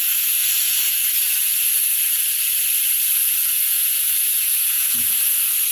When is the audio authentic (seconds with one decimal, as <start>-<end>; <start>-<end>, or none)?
1.0-3.7